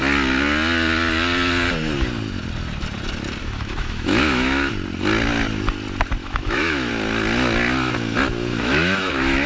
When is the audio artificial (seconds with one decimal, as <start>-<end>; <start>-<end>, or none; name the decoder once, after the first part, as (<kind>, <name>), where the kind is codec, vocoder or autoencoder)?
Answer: 3.4-4.7 (autoencoder, DAC-VAE); 6.2-6.9; 8.5-9.5